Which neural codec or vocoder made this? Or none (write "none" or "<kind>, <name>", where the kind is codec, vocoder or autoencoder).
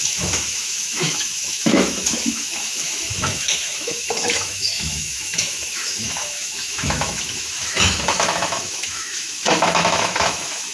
autoencoder, DAC-VAE